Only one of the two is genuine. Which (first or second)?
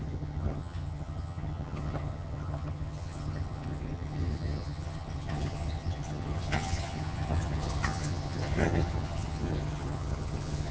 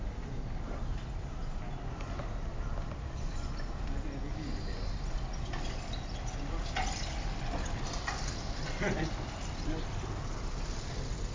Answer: second